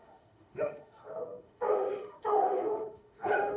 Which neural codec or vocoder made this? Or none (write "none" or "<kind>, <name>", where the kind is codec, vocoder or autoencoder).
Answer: autoencoder, DAC-VAE